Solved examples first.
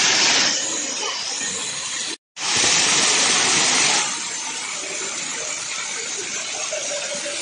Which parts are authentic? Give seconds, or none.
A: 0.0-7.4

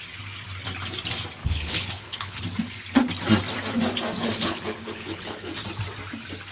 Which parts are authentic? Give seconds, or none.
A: 0.0-1.4; 2.4-4.2; 5.5-6.5

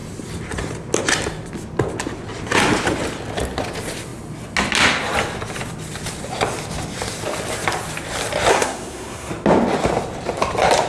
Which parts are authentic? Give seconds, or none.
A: 0.0-8.5; 9.3-10.9

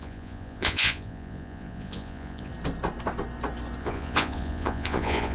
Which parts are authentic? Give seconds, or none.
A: 2.5-3.8

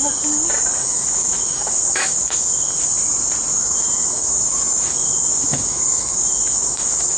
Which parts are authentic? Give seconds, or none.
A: 0.0-0.8; 2.7-3.5

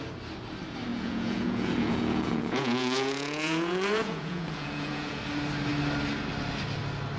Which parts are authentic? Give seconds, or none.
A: 0.0-0.9; 5.2-7.2

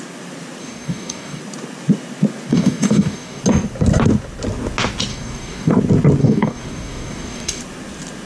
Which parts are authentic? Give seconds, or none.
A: 0.0-0.6; 1.4-2.5; 3.4-5.1; 5.7-6.2; 7.6-8.3

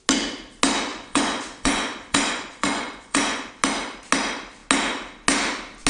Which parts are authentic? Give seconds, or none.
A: 0.0-0.9; 3.5-5.9